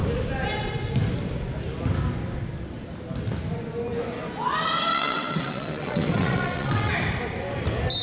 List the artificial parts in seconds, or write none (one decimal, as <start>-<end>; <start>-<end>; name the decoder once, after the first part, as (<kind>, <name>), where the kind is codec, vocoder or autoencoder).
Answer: 4.9-6.9 (vocoder, WaveNeXt)